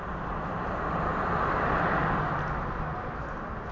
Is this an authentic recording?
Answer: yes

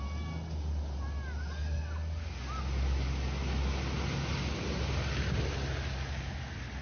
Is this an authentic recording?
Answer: yes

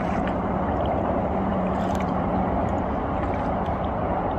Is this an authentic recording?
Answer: no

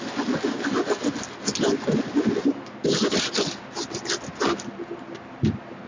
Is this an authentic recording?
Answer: yes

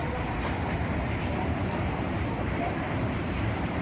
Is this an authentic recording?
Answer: no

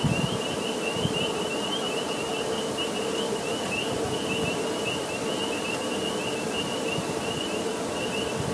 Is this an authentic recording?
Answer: yes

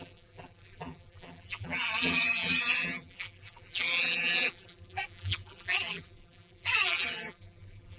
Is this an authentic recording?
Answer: no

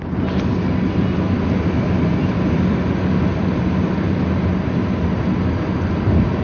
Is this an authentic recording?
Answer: yes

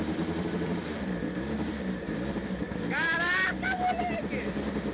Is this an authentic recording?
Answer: no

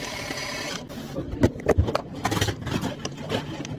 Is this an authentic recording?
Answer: no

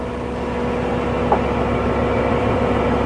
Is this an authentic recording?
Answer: no